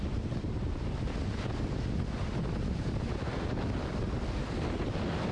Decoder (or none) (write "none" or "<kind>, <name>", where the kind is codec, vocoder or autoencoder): none